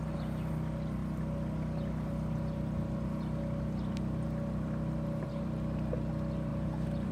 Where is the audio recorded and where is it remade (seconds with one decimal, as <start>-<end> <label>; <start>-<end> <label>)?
0.0-1.0 recorded; 1.0-5.3 remade; 5.3-7.1 recorded